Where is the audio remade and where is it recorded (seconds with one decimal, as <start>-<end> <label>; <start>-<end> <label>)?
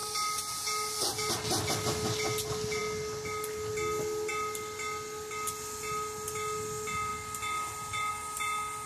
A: 0.0-8.9 recorded